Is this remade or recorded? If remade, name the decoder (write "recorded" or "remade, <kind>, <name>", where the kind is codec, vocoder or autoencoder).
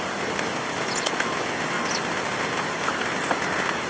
recorded